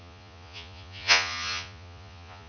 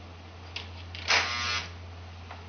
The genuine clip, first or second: second